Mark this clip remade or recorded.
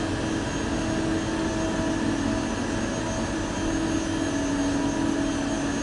recorded